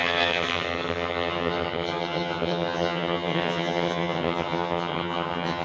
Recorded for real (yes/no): no